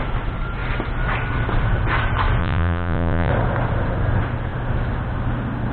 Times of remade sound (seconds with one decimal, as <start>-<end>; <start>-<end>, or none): 2.4-3.3